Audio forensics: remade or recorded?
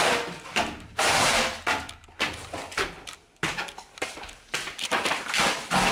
recorded